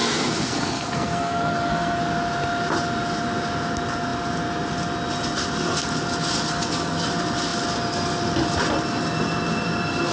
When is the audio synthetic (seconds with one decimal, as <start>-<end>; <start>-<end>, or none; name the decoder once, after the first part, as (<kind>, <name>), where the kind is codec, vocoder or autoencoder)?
0.0-2.0 (codec, SNAC); 6.5-7.1